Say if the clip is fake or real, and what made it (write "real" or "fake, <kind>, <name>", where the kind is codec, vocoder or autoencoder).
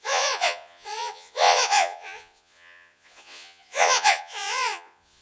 fake, vocoder, Vocos